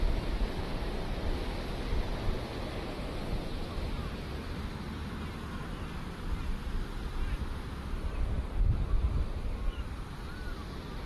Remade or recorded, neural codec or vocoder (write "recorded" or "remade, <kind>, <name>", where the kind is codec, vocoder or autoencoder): remade, vocoder, BigVGAN v2